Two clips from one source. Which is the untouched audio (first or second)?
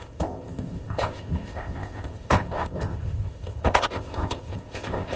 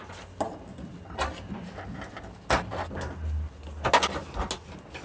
second